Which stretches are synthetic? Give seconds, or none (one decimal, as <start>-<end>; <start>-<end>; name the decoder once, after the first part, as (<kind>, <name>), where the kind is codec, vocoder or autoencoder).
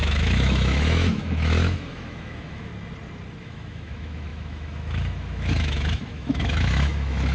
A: 0.0-2.7 (autoencoder, DAC-VAE); 3.4-7.3